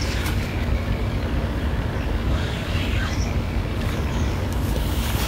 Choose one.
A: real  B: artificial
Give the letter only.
B